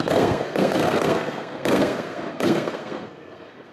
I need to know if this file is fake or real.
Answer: fake